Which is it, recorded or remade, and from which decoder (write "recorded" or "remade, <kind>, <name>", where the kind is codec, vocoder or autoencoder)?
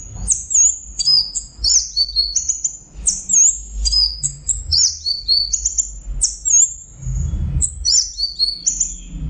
recorded